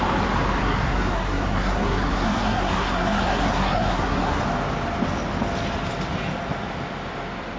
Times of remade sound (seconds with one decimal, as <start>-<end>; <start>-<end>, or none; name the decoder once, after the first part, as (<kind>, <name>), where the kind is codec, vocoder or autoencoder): 0.6-4.4 (codec, SNAC)